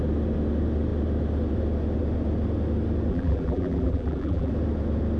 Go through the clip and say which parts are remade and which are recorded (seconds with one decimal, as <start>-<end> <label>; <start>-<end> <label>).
0.0-3.1 recorded; 3.1-4.5 remade; 4.5-5.2 recorded